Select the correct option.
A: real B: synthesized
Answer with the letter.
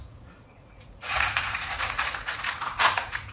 B